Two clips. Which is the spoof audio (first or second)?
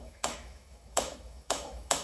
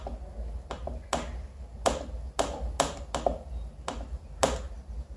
first